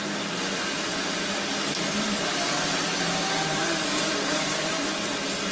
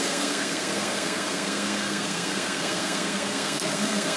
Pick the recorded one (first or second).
first